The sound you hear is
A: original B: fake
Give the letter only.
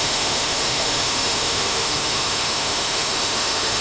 B